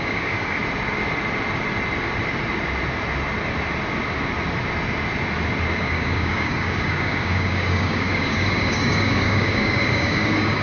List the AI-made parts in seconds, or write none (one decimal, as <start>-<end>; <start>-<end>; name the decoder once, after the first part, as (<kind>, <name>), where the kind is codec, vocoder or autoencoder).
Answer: 0.0-0.6 (codec, DAC); 5.8-10.6